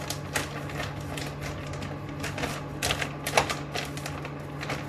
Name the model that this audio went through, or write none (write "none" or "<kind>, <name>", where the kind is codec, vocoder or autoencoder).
none